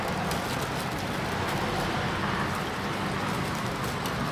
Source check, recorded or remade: recorded